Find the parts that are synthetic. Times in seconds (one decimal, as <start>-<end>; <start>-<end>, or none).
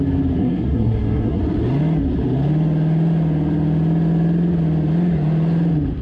0.4-1.4